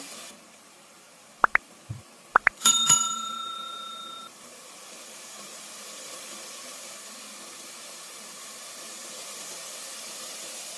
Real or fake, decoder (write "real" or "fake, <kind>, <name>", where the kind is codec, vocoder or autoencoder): fake, vocoder, BigVGAN v2